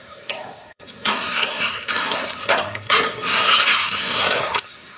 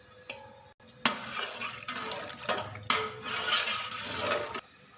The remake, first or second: first